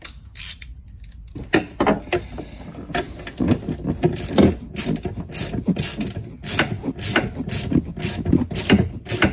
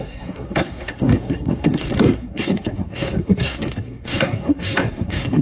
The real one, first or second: first